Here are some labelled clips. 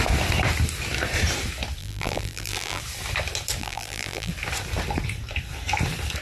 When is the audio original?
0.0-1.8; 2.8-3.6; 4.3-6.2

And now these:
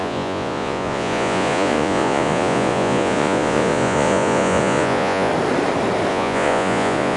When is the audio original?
5.3-6.1

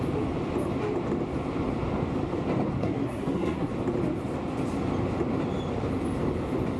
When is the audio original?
0.0-2.8; 3.7-6.8

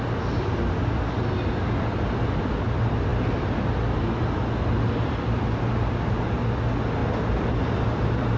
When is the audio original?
0.0-8.4

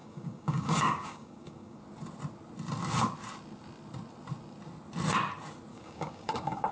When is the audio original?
1.8-5.7

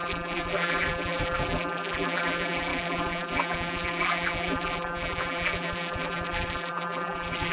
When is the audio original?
none

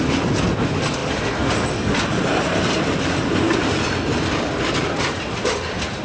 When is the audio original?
0.0-6.0

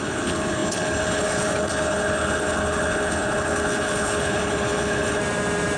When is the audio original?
5.2-5.8